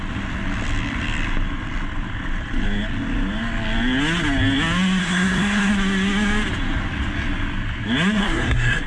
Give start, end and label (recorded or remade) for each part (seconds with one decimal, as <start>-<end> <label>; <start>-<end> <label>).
0.0-5.0 recorded; 5.0-5.7 remade; 5.7-8.2 recorded; 8.2-8.9 remade